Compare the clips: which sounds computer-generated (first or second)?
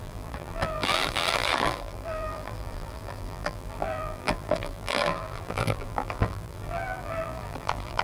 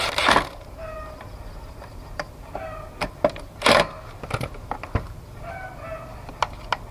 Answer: first